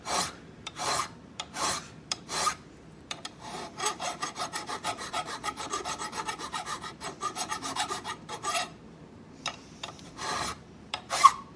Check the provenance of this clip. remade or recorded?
remade